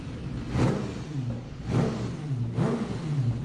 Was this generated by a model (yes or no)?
no